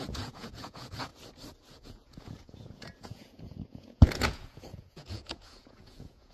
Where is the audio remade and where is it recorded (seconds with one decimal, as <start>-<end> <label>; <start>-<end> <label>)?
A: 0.0-1.1 remade; 1.1-1.7 recorded; 1.7-6.3 remade